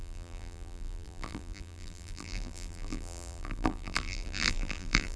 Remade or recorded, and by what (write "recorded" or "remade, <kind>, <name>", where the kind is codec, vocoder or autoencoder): remade, vocoder, BigVGAN v2